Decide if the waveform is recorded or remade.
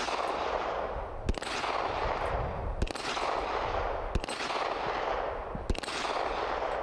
recorded